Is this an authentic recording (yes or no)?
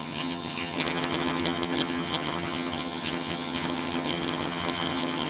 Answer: no